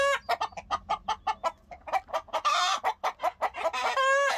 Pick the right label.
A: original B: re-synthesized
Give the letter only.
A